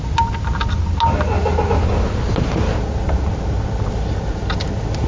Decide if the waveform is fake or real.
real